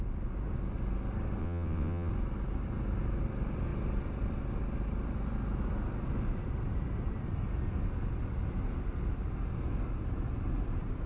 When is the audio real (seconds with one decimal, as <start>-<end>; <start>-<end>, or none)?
0.0-1.4; 2.1-11.1